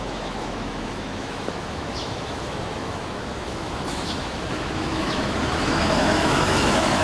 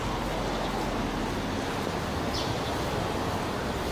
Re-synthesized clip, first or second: first